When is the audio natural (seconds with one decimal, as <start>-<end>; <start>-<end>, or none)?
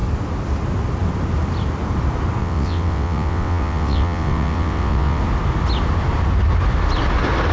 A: 0.0-2.4; 5.2-7.5